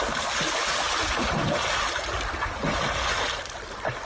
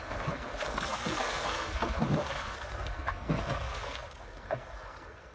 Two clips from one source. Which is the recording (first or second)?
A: first